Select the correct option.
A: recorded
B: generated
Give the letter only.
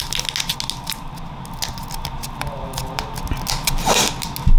A